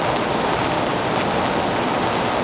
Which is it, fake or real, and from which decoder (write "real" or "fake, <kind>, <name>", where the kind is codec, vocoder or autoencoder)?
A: real